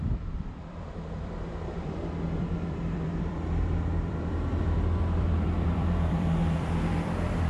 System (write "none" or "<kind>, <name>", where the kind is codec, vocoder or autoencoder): vocoder, BigVGAN v2